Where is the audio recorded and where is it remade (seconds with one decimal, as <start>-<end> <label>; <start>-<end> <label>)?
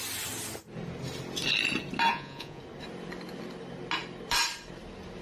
0.0-2.1 recorded; 2.1-2.6 remade; 2.6-5.2 recorded